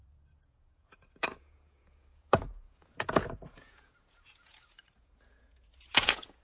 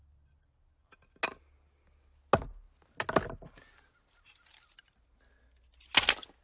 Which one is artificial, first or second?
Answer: first